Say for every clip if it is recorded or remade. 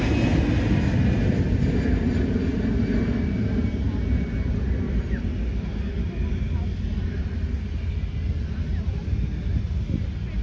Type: recorded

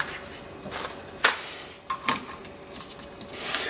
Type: recorded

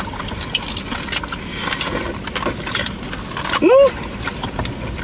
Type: recorded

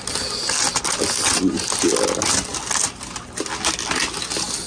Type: recorded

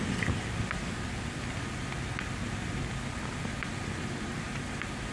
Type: remade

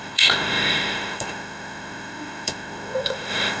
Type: remade